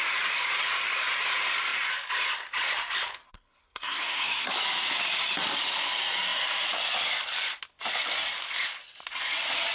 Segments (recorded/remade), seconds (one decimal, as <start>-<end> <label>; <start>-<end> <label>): 0.0-3.2 recorded; 3.2-4.5 remade; 4.5-9.7 recorded